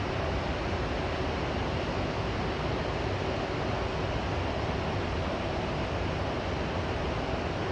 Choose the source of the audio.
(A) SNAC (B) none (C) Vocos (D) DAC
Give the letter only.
B